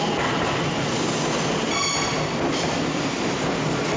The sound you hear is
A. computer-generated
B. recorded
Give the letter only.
B